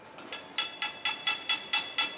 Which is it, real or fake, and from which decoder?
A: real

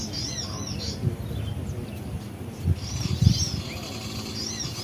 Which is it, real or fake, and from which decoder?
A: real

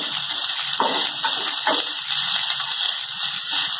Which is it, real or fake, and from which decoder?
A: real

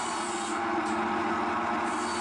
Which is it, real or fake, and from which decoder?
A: real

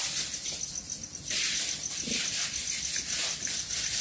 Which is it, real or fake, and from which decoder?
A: real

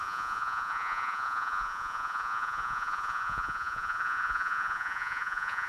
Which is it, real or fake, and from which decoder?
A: fake, vocoder, Vocos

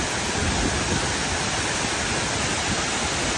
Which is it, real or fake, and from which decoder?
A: real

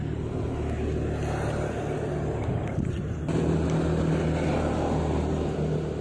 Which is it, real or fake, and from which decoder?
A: real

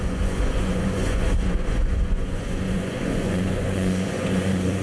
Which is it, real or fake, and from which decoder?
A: fake, vocoder, Vocos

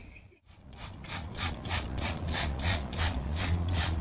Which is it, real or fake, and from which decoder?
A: fake, vocoder, Vocos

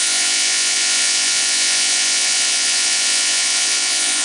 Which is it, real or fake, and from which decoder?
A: fake, vocoder, Vocos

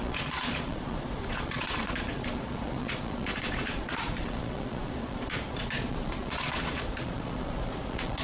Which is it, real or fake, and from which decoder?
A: fake, vocoder, Vocos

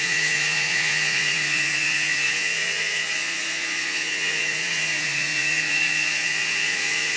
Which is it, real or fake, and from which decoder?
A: fake, vocoder, Vocos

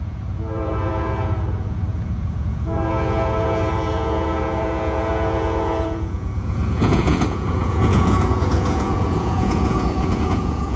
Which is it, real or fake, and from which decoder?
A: fake, vocoder, Vocos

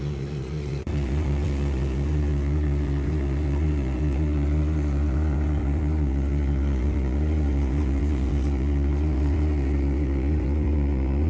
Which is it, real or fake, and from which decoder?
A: fake, vocoder, Vocos